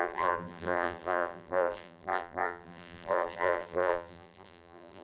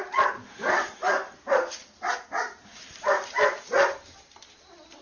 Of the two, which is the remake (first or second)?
first